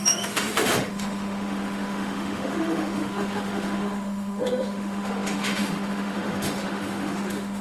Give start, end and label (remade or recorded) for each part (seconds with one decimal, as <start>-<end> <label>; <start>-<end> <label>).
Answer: 0.0-7.6 remade